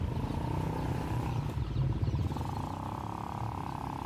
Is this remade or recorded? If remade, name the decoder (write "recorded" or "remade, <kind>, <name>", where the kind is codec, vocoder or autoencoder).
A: recorded